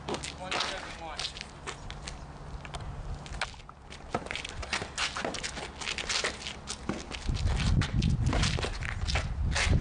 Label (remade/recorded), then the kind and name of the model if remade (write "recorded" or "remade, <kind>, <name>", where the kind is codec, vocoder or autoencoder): recorded